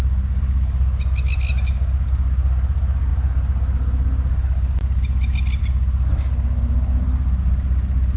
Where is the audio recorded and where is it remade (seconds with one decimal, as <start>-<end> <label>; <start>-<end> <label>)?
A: 0.0-8.2 recorded